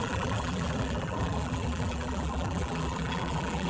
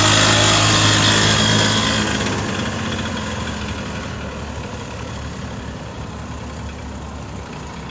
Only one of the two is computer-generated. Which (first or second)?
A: first